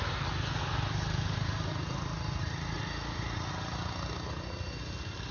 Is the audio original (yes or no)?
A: yes